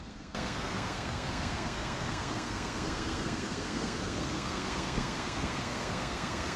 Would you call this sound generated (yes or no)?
yes